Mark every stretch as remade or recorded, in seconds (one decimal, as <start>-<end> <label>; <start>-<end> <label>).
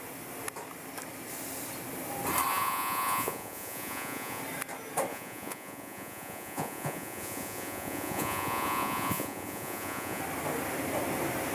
0.0-2.5 recorded; 2.5-4.4 remade; 4.4-5.1 recorded; 5.1-10.2 remade; 10.2-11.5 recorded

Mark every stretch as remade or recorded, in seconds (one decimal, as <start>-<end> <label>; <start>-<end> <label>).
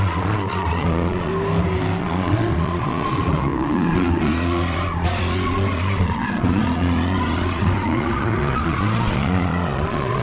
0.0-1.3 remade; 1.3-2.0 recorded; 2.0-10.2 remade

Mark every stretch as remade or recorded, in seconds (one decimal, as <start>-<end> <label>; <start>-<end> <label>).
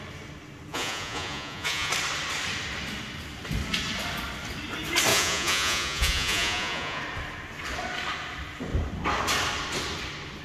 0.0-0.7 recorded; 0.7-1.9 remade; 1.9-5.1 recorded; 5.1-7.0 remade; 7.0-10.4 recorded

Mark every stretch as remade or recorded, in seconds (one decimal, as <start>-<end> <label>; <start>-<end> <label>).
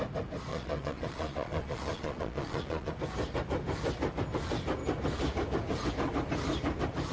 0.0-0.5 recorded; 0.5-2.9 remade; 2.9-7.1 recorded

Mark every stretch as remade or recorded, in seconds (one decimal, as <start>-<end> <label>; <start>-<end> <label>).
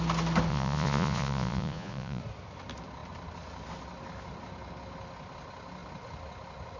0.0-0.5 recorded; 0.5-2.2 remade; 2.2-6.8 recorded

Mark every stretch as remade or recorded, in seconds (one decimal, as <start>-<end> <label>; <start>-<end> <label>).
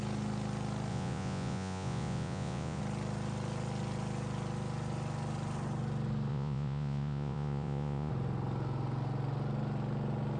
0.0-0.9 recorded; 0.9-2.8 remade; 2.8-6.3 recorded; 6.3-8.1 remade; 8.1-10.4 recorded